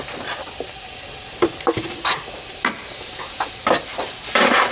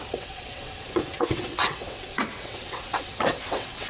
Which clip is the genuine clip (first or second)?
first